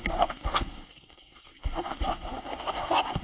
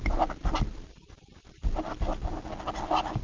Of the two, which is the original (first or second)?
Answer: second